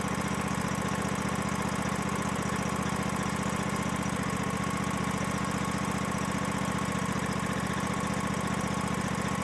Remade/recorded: recorded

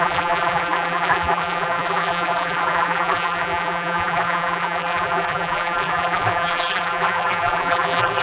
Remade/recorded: remade